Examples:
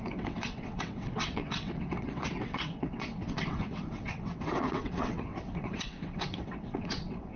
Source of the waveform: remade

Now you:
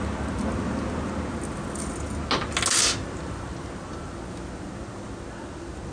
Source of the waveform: recorded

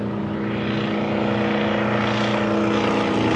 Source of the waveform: recorded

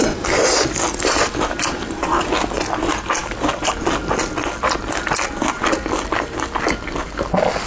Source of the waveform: recorded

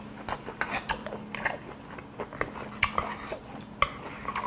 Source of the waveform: recorded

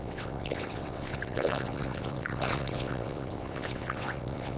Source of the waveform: remade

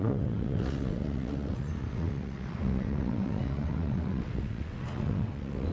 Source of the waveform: remade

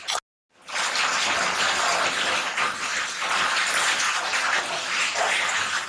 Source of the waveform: recorded